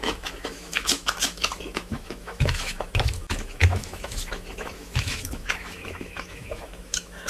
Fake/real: fake